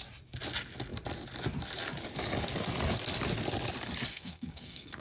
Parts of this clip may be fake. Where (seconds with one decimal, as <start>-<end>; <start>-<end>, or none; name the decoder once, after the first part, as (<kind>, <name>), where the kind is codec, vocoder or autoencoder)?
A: 4.1-5.0 (codec, SNAC)

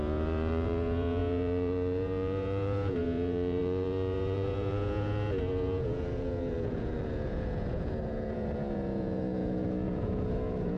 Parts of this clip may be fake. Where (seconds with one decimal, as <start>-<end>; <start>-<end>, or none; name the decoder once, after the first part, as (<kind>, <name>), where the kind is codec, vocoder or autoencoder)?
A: 0.0-10.8 (vocoder, Vocos)

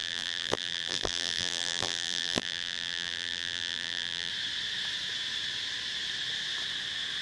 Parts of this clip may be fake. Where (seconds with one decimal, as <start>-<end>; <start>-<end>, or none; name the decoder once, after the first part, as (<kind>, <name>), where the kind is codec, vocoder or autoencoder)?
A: 0.0-4.3 (vocoder, BigVGAN v2)

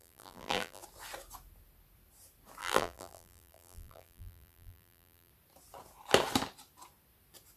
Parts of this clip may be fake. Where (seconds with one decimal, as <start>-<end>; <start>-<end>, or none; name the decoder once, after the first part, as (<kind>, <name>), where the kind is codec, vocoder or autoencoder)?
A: 0.0-0.8 (vocoder, BigVGAN v2); 2.6-5.3

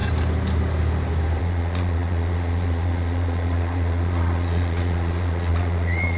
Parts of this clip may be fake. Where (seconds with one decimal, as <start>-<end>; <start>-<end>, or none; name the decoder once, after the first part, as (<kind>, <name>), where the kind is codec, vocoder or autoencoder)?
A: 1.4-6.2 (vocoder, Vocos)

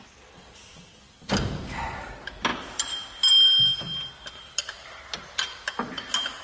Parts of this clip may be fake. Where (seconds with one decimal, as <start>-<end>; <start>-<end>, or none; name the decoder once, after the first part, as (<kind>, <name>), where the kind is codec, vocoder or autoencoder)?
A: none

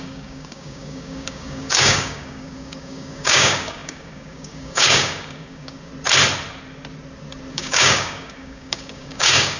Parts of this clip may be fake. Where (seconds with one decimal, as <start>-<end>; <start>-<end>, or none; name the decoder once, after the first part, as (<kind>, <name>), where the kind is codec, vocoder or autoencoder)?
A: 0.0-5.9 (codec, DAC); 7.5-9.6

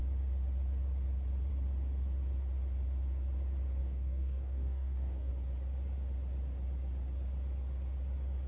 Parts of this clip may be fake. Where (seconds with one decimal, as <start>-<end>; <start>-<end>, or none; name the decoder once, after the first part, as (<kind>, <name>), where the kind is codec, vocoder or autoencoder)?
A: 3.8-5.3 (codec, DAC)